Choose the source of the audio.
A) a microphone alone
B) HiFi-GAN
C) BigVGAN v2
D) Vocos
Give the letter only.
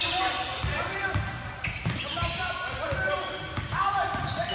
A